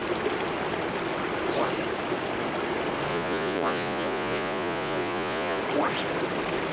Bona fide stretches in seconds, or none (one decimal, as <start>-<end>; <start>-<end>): 0.0-3.1; 5.6-6.7